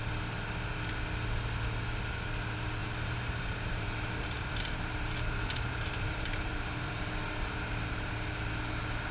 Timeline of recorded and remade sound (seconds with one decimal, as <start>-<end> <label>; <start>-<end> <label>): 0.0-2.8 recorded; 2.8-6.9 remade; 6.9-9.1 recorded